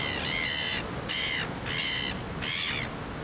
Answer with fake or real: real